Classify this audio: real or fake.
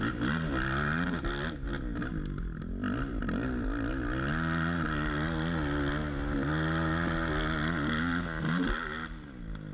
real